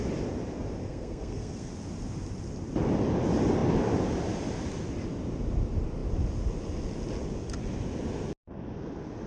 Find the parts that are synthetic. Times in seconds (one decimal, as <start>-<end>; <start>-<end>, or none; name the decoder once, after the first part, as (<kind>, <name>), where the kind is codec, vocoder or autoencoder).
0.8-1.7 (codec, SNAC)